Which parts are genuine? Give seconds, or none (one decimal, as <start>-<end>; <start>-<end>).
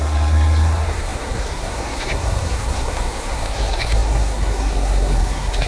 none